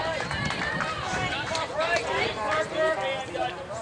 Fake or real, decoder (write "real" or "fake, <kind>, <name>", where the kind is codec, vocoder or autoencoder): fake, vocoder, BigVGAN v2